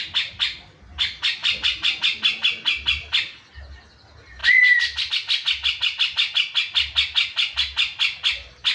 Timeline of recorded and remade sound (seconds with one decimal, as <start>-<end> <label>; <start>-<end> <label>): 0.0-1.4 recorded; 1.4-2.0 remade; 2.0-8.7 recorded